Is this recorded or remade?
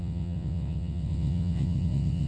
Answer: remade